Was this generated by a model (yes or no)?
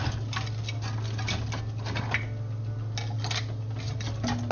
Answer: no